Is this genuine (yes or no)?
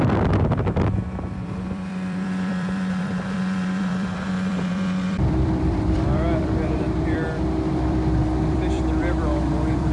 no